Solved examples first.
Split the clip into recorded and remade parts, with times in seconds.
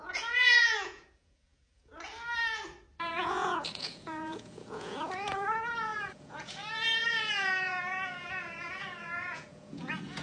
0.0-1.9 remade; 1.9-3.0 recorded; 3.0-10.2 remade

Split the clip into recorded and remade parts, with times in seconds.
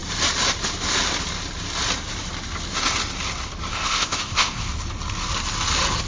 0.0-3.7 recorded; 3.7-4.6 remade; 4.6-6.1 recorded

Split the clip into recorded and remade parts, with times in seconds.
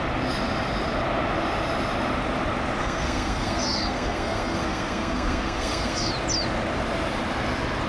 0.0-2.8 recorded; 2.8-6.1 remade; 6.1-7.9 recorded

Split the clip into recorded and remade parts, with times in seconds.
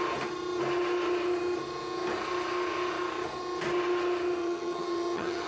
0.0-4.4 recorded; 4.4-5.5 remade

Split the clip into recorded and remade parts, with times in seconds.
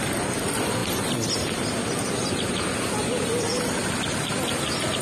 0.0-5.0 recorded